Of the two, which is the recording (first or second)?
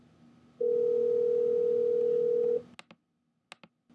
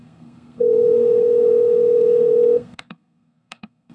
first